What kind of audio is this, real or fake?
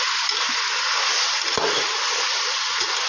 real